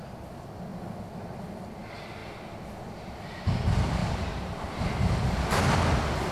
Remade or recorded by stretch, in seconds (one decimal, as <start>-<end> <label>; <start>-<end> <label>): 0.0-4.0 recorded; 4.0-5.6 remade; 5.6-6.3 recorded